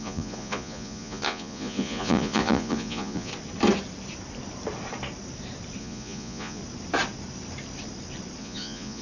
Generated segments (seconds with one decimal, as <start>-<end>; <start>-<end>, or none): 0.0-3.3; 5.8-6.6; 8.4-9.0